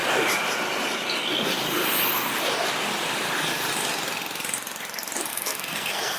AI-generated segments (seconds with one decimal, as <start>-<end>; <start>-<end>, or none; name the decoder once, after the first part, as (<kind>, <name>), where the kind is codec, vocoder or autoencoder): 5.3-6.2 (codec, SNAC)